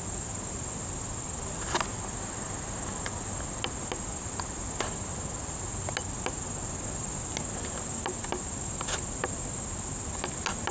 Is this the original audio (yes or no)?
yes